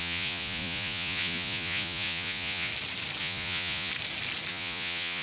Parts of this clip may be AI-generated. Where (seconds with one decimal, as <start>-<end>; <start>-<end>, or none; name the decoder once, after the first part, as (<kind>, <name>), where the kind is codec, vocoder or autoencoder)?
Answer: 0.0-2.7 (vocoder, Vocos); 3.2-3.9; 4.5-5.2